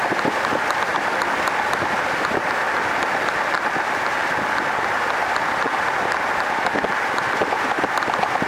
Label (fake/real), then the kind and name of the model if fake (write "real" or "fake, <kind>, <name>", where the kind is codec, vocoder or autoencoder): real